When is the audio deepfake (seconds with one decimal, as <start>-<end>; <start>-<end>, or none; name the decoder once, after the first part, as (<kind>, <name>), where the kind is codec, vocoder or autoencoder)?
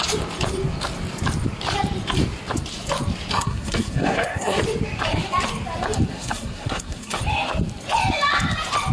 3.3-4.6 (codec, SNAC); 6.1-7.2